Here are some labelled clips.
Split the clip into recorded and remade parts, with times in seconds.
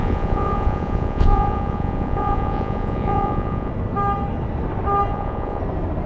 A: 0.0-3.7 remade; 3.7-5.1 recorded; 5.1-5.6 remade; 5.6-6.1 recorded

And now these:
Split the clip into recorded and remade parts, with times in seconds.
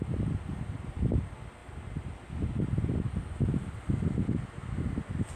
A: 0.0-5.4 recorded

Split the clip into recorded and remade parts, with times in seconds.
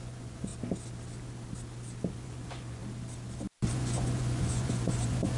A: 0.0-0.5 remade; 0.5-2.1 recorded; 2.1-2.8 remade; 2.8-3.7 recorded; 3.7-5.4 remade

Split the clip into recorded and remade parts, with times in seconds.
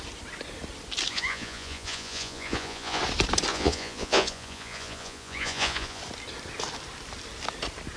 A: 0.0-1.1 recorded; 1.1-3.0 remade; 3.0-3.5 recorded; 3.5-6.0 remade; 6.0-8.0 recorded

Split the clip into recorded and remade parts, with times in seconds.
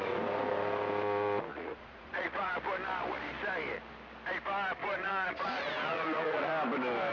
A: 0.0-1.5 recorded; 1.5-2.5 remade; 2.5-4.8 recorded; 4.8-6.5 remade; 6.5-7.1 recorded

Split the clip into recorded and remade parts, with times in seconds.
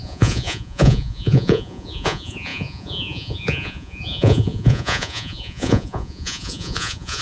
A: 0.0-7.2 remade